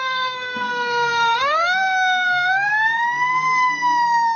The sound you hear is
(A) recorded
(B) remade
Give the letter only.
B